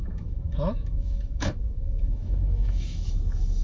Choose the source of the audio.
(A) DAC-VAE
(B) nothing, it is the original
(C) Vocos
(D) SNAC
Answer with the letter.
A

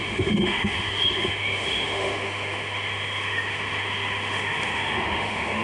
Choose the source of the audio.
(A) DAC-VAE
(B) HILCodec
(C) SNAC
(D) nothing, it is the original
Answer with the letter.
A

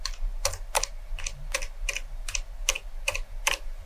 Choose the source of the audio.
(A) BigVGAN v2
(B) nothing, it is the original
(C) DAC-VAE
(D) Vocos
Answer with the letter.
B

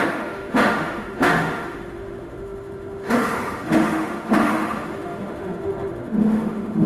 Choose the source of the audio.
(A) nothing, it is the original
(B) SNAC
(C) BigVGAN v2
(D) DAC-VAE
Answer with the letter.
D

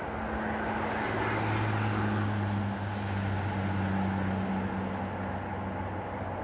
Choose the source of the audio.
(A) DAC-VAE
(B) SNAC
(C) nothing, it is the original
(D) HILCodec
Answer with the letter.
C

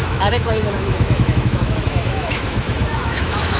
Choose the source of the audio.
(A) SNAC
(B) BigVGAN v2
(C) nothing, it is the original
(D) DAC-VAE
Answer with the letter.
D